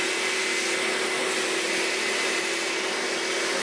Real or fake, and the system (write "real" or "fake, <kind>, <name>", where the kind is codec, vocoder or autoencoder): real